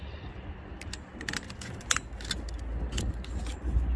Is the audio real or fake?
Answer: real